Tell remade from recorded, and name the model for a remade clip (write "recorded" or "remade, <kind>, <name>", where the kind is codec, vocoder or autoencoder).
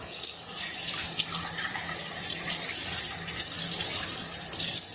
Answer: recorded